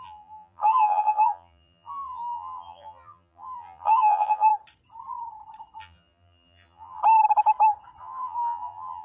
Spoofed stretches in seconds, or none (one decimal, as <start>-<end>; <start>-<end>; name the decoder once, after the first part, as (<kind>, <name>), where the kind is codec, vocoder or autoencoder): 0.0-4.5 (vocoder, BigVGAN v2); 5.8-7.0; 8.0-9.0